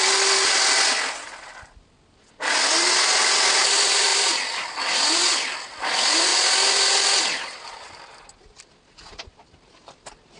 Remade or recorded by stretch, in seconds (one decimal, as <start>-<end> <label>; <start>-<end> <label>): 0.0-10.4 recorded